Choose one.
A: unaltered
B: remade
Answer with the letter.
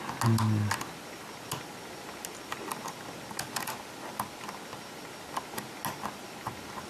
A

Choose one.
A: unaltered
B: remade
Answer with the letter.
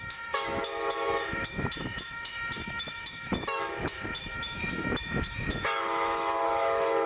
B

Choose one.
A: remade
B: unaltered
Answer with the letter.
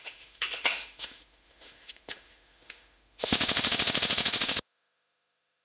A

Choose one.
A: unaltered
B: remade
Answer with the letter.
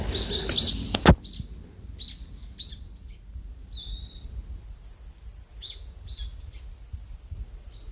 A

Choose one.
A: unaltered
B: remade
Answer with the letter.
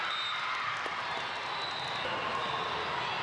A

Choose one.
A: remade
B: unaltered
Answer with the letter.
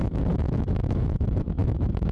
A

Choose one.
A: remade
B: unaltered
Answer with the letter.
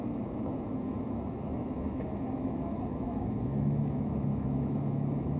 A